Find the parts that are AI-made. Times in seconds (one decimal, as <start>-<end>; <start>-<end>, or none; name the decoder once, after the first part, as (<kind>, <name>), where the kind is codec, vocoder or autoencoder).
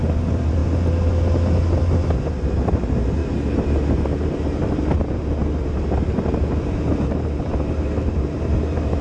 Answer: 0.0-0.6 (vocoder, BigVGAN v2); 2.2-3.2; 3.9-9.0